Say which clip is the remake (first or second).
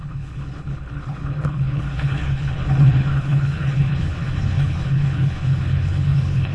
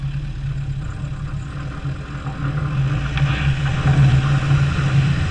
first